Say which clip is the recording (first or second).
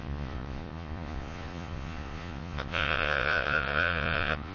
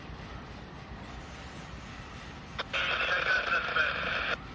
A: second